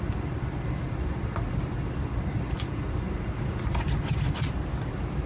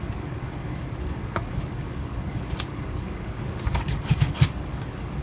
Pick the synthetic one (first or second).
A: second